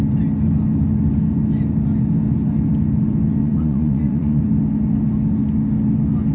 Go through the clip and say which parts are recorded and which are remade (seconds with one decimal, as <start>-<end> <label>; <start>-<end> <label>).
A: 0.0-3.4 recorded; 3.4-4.4 remade; 4.4-6.3 recorded